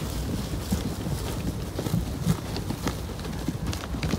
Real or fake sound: real